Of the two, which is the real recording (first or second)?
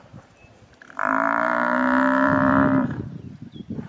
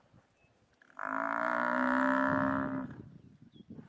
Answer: second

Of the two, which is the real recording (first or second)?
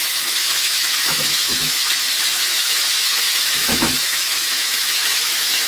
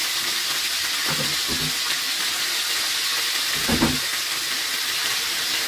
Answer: second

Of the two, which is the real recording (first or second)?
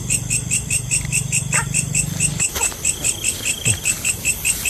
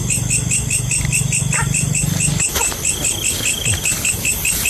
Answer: second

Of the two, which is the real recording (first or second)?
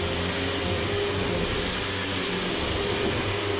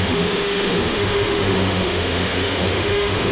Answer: first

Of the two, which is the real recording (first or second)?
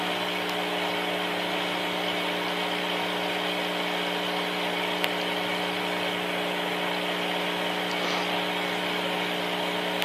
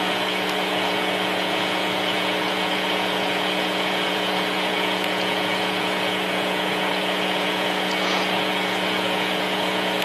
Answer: first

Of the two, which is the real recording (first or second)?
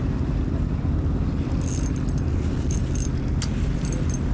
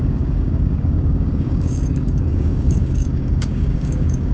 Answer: first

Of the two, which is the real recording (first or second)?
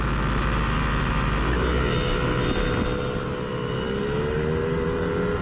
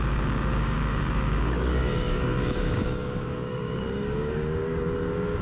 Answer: first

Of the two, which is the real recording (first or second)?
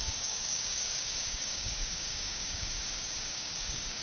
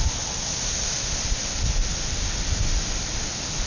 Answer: second